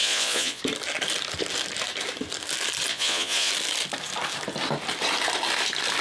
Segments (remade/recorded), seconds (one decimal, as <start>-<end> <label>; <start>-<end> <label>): 0.0-0.6 remade; 0.6-2.9 recorded; 2.9-3.5 remade; 3.5-6.0 recorded